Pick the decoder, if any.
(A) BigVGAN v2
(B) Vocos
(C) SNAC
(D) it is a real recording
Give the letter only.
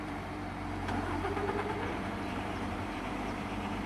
A